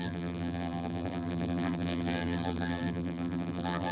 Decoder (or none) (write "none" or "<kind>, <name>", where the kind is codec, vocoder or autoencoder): vocoder, BigVGAN v2